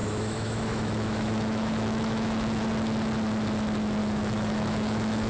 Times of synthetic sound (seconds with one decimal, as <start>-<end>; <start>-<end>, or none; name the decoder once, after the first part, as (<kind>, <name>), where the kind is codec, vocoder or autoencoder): 0.0-2.6 (autoencoder, DAC-VAE); 4.0-5.3

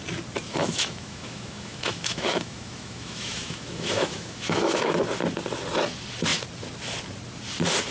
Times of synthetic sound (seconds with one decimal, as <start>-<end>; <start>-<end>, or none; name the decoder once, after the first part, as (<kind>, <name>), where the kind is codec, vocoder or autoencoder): 0.5-5.0 (autoencoder, DAC-VAE)

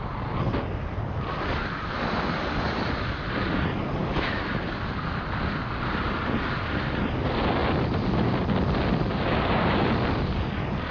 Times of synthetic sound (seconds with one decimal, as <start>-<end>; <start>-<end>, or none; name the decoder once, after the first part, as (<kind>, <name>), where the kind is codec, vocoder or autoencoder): 4.0-4.6 (autoencoder, DAC-VAE)

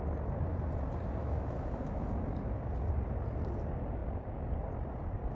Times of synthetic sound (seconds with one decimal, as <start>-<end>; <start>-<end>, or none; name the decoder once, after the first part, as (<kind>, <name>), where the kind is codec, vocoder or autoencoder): 1.2-2.1 (autoencoder, DAC-VAE)

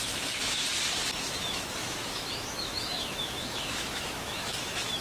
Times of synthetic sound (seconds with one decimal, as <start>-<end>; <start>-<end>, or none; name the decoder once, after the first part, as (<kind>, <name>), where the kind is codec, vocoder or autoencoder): 0.0-0.6 (autoencoder, DAC-VAE); 1.2-5.0

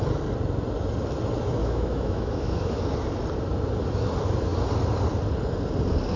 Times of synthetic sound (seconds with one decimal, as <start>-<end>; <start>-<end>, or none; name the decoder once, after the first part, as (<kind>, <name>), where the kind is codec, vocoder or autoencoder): 1.6-2.8 (autoencoder, DAC-VAE)

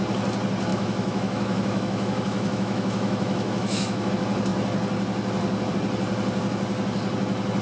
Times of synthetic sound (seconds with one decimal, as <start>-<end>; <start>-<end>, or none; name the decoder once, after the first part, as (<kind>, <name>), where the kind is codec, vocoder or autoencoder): 0.7-4.1 (autoencoder, DAC-VAE)